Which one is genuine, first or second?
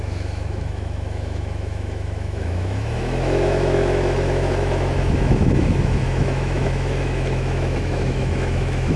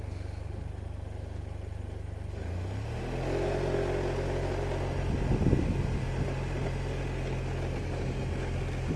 second